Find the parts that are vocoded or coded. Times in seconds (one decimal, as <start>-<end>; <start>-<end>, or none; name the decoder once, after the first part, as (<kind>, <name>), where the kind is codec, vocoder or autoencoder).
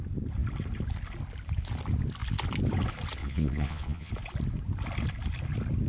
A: 3.2-4.1 (vocoder, Vocos)